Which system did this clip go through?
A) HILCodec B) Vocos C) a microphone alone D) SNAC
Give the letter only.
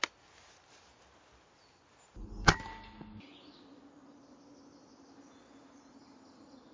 C